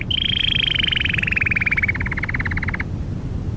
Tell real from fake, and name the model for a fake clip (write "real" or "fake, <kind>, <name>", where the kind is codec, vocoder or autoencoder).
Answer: real